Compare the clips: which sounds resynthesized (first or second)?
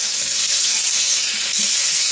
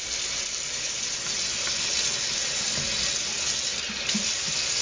first